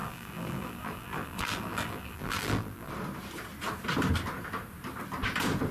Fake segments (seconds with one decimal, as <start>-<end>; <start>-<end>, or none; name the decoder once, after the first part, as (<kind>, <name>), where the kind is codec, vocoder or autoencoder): 0.0-2.9 (vocoder, BigVGAN v2)